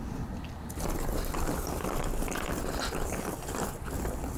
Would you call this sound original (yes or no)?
yes